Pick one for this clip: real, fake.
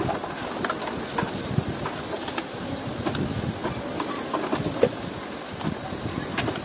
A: real